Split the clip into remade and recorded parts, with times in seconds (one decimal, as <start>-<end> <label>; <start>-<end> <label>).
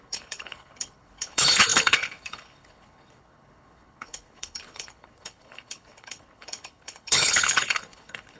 0.0-8.4 remade